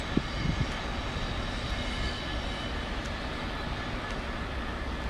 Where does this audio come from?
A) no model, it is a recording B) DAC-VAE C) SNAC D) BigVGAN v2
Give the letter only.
A